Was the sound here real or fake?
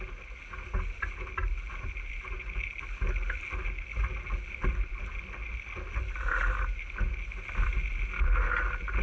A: real